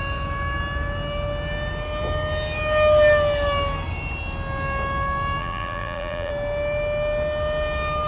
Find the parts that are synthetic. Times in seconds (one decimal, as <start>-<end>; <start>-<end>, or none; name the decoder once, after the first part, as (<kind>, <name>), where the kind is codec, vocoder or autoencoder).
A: 5.4-6.3 (vocoder, BigVGAN v2)

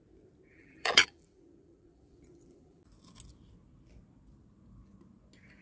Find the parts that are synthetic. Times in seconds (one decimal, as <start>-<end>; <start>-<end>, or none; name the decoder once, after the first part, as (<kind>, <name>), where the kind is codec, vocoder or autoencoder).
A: 0.5-2.8 (vocoder, BigVGAN v2)

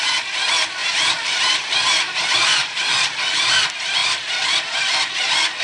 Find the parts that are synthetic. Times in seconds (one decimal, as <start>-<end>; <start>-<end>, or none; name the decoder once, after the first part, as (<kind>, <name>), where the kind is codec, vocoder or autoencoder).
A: 0.8-2.9 (vocoder, BigVGAN v2)

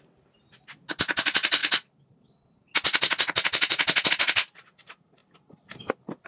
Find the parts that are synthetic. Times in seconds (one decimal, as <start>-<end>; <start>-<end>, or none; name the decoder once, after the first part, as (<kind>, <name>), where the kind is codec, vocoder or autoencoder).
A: none

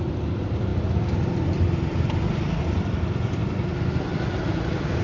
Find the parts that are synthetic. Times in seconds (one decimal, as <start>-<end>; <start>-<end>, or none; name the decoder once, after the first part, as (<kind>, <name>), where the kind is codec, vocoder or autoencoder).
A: 0.0-5.0 (vocoder, BigVGAN v2)

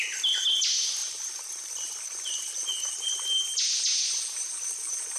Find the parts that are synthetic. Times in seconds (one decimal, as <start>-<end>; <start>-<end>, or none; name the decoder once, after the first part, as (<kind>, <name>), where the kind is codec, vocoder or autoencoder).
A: none